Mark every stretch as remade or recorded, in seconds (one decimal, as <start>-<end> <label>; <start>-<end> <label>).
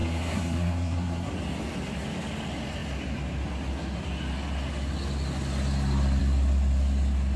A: 0.0-1.3 remade; 1.3-7.4 recorded